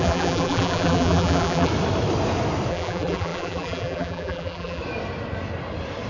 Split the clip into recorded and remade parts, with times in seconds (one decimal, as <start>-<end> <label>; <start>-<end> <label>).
0.0-1.7 remade; 1.7-2.7 recorded; 2.7-4.8 remade; 4.8-6.1 recorded